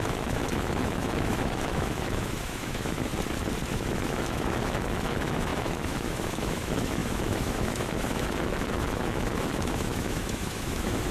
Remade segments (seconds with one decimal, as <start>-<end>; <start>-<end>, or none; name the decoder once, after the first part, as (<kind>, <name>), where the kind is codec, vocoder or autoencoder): 0.0-3.1 (autoencoder, DAC-VAE); 3.7-11.1